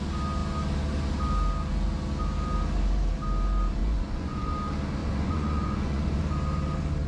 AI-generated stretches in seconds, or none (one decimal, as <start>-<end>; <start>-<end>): 3.8-4.5; 5.0-6.2